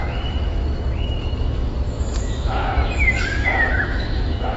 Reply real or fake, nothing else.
fake